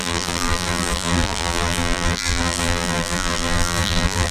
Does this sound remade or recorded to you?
remade